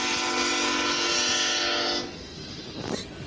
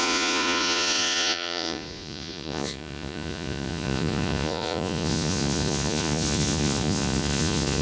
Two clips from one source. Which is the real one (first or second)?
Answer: first